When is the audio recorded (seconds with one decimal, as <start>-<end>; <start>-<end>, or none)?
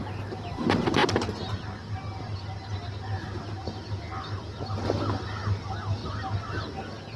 0.0-7.2